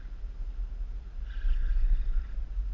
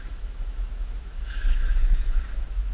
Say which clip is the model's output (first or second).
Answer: second